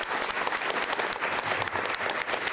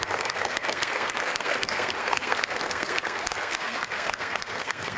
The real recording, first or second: first